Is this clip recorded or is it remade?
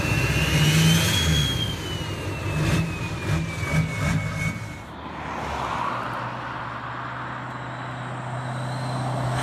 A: recorded